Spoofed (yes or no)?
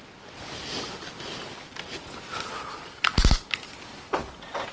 no